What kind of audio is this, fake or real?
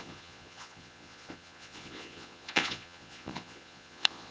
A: fake